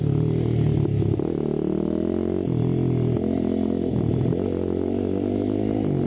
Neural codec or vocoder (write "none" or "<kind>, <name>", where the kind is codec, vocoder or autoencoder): none